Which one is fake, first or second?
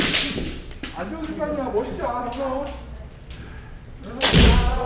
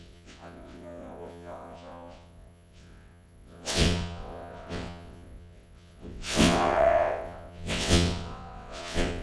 second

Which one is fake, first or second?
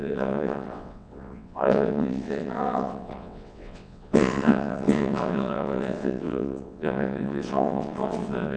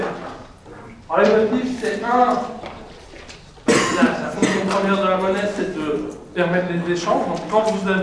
first